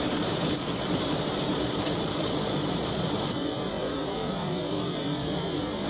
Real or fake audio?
fake